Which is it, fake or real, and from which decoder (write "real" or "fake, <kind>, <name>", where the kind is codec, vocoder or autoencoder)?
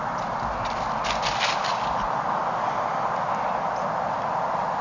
real